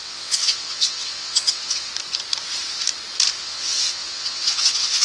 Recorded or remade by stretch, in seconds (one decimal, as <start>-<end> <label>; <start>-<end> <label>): 0.0-1.9 remade; 1.9-3.4 recorded; 3.4-5.0 remade